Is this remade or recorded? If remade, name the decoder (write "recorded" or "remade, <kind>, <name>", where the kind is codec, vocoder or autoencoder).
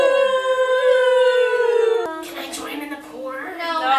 recorded